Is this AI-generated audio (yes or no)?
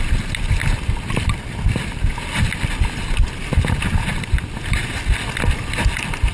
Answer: no